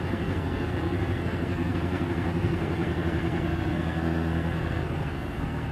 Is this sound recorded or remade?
remade